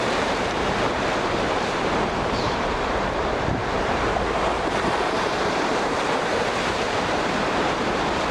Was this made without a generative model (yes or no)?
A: no